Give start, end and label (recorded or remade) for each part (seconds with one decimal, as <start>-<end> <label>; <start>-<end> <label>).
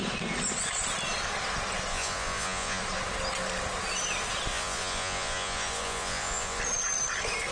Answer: 0.0-1.9 recorded; 1.9-2.8 remade; 2.8-4.5 recorded; 4.5-6.6 remade; 6.6-7.5 recorded